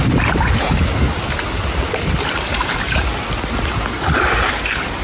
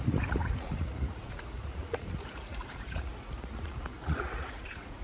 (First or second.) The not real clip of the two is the second